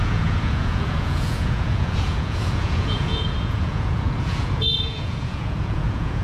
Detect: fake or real fake